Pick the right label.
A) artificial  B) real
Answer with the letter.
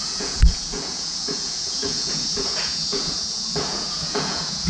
A